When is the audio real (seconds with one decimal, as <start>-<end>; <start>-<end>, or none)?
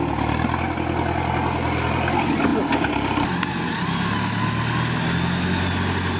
0.0-6.2